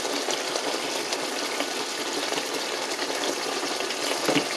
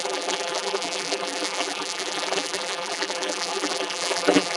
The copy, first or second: second